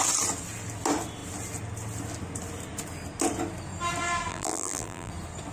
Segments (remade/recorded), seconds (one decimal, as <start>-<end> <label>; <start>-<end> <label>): 0.0-4.3 recorded; 4.3-5.1 remade; 5.1-5.5 recorded

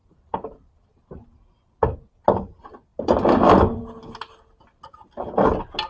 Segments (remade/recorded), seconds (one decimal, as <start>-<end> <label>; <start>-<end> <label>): 0.0-0.8 remade; 0.8-2.9 recorded; 2.9-3.8 remade; 3.8-5.9 recorded

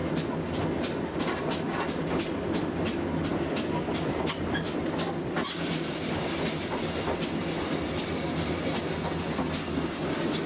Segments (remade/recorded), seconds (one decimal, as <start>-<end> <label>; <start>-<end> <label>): 0.0-3.3 recorded; 3.3-6.2 remade; 6.2-10.5 recorded

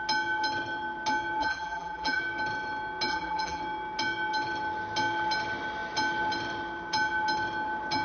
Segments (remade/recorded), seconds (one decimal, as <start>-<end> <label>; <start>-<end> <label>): 0.0-1.4 recorded; 1.4-2.2 remade; 2.2-3.1 recorded; 3.1-3.6 remade; 3.6-8.0 recorded